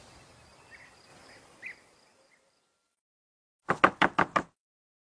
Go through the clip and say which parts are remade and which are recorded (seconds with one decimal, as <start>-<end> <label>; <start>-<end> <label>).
0.0-5.0 recorded